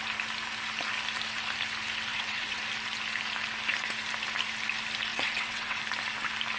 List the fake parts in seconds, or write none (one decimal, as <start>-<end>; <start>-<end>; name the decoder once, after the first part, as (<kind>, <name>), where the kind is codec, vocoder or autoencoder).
2.1-2.6 (vocoder, WaveNeXt); 5.1-5.8